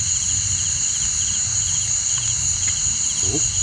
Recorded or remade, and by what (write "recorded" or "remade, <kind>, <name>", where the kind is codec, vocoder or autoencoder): recorded